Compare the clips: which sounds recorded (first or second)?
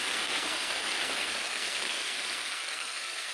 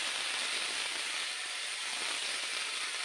second